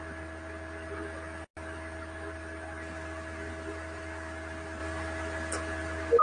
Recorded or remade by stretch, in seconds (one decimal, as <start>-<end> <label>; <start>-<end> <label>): 0.0-6.2 recorded